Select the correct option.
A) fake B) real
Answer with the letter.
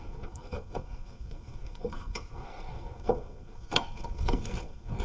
A